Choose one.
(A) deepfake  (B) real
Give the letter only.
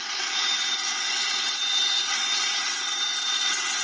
A